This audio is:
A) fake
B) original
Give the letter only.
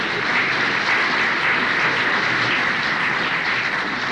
B